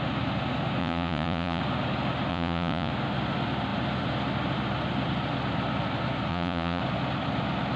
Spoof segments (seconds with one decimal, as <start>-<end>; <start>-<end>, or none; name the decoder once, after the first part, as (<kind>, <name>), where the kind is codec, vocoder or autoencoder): 0.8-1.6 (vocoder, Vocos); 2.3-2.9; 6.3-6.8